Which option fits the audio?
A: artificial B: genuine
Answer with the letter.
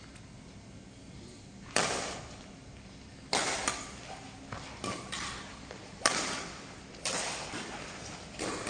B